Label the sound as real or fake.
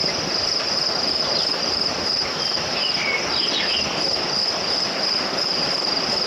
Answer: real